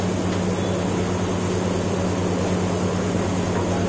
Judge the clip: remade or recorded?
recorded